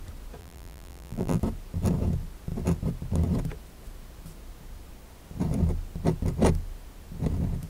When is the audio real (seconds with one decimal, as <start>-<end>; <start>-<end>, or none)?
0.0-0.4; 1.4-7.7